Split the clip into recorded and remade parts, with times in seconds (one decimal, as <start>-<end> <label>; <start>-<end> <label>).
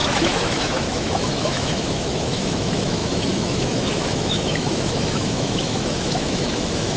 0.0-7.0 remade